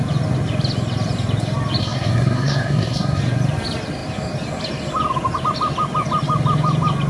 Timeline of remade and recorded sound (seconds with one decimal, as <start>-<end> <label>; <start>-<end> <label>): 0.0-1.8 recorded; 1.8-3.2 remade; 3.2-7.1 recorded